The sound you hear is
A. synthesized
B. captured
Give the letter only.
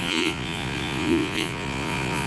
A